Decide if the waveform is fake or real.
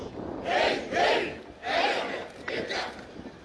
real